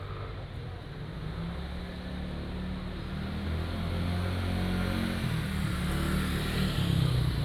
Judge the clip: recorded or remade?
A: recorded